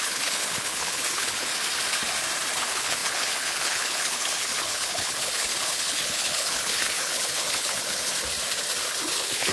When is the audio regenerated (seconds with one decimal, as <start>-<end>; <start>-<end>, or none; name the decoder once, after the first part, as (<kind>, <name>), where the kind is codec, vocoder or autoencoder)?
0.0-1.5 (codec, HILCodec); 2.6-8.1; 9.1-9.5